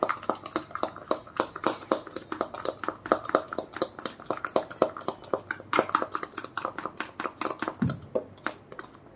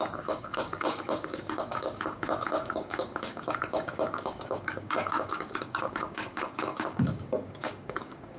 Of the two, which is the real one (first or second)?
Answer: first